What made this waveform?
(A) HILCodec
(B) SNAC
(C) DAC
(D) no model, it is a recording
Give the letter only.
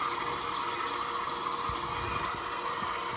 D